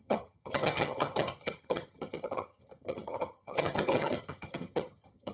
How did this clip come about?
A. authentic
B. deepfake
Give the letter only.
B